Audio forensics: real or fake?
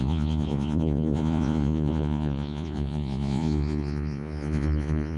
fake